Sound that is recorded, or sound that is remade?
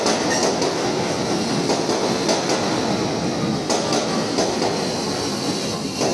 recorded